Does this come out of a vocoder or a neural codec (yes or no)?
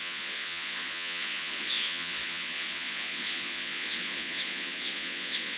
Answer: yes